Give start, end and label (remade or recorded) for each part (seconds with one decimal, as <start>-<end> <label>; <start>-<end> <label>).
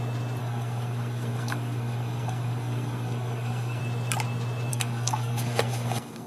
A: 0.0-0.4 recorded; 0.4-3.8 remade; 3.8-4.7 recorded; 4.7-6.3 remade